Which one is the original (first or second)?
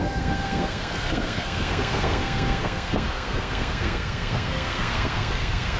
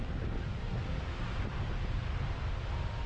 second